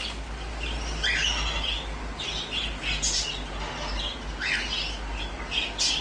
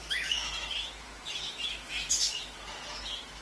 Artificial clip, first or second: second